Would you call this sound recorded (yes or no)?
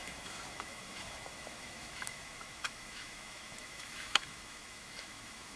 no